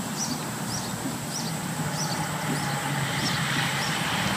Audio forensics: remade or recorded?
remade